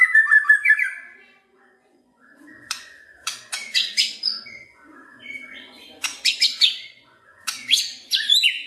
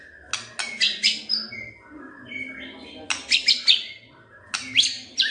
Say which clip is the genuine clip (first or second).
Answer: second